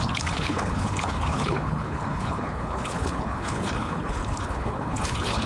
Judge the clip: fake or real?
fake